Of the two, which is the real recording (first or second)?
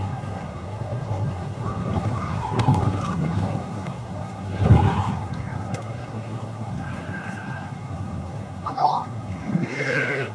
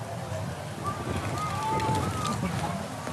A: second